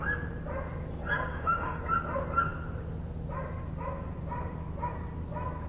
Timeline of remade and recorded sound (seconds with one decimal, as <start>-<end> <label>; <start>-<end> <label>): 0.0-1.3 recorded; 1.3-1.8 remade; 1.8-5.7 recorded